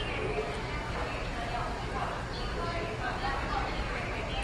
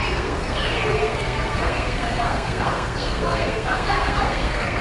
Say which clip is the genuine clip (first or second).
first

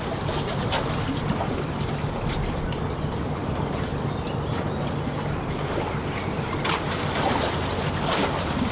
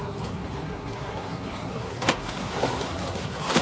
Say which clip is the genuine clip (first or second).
first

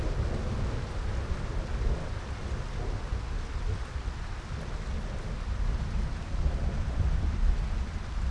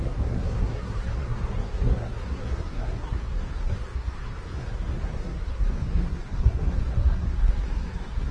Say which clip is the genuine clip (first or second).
first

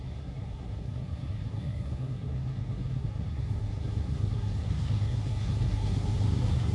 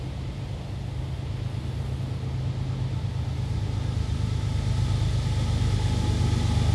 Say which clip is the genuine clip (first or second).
second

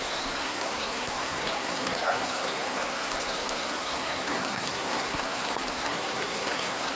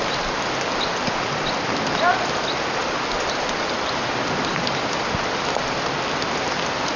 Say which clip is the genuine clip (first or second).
second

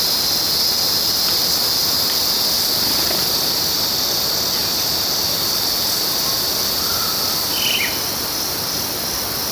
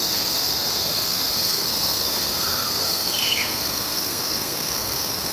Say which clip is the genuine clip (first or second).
first